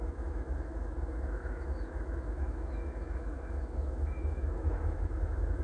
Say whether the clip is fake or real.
fake